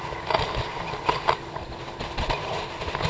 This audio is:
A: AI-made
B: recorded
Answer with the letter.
B